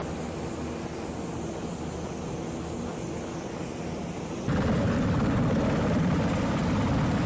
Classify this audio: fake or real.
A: real